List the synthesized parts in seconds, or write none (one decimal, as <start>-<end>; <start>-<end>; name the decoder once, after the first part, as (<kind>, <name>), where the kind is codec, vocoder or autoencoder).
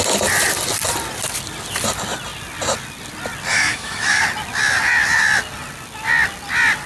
3.5-4.2 (autoencoder, DAC-VAE)